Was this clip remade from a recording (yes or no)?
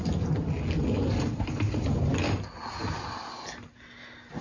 no